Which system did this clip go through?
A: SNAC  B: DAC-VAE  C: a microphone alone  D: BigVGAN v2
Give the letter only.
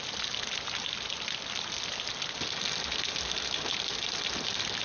C